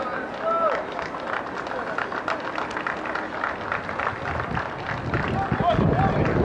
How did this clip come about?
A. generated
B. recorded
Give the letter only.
B